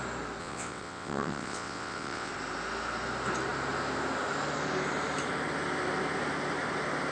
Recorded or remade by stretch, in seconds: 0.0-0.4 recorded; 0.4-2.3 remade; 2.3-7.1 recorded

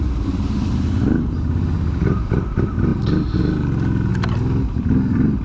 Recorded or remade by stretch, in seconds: 0.0-5.4 recorded